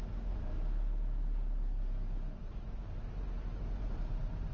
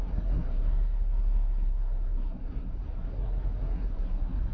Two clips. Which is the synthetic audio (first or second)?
second